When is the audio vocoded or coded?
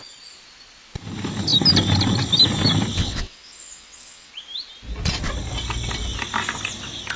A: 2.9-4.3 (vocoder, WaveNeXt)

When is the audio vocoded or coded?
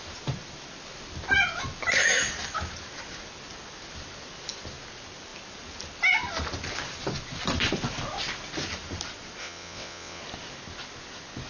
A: 9.4-10.2 (vocoder, WaveNeXt)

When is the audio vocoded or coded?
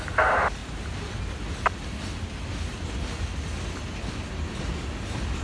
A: none